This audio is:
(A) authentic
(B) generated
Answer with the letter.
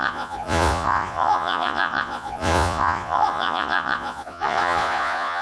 B